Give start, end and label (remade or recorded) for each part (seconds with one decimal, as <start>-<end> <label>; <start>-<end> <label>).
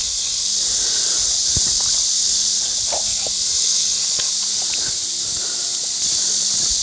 0.0-0.5 remade; 0.5-3.1 recorded; 3.1-4.3 remade; 4.3-6.8 recorded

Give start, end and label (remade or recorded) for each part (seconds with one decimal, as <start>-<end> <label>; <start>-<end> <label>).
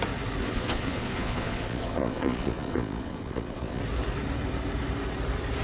0.0-0.4 recorded; 0.4-3.8 remade; 3.8-5.6 recorded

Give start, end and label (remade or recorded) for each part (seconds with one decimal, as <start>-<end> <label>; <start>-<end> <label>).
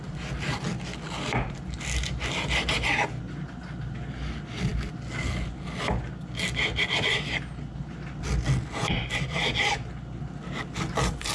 0.0-11.3 recorded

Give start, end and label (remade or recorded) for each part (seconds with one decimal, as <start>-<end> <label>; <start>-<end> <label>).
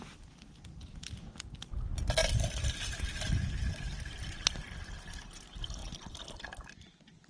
0.0-2.2 recorded; 2.2-4.1 remade; 4.1-5.8 recorded; 5.8-7.3 remade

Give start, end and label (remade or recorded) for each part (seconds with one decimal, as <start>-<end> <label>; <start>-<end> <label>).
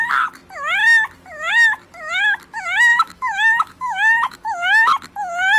0.0-2.9 recorded; 2.9-4.9 remade; 4.9-5.6 recorded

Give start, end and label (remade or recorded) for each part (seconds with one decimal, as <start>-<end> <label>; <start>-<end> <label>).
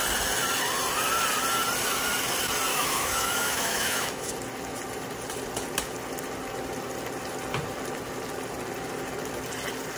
0.0-2.7 recorded; 2.7-4.3 remade; 4.3-10.0 recorded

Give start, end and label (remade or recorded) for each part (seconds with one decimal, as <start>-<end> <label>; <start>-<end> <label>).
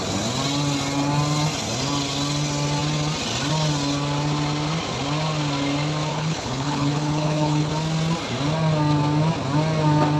0.0-6.1 recorded; 6.1-7.7 remade; 7.7-10.2 recorded